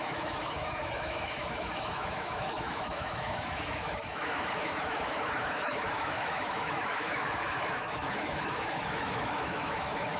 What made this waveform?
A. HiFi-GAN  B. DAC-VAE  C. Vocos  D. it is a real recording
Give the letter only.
B